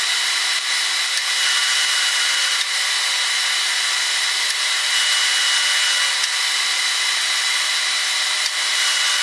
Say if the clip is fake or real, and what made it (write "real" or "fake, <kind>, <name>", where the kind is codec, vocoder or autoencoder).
real